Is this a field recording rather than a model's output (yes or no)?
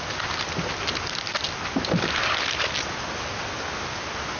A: yes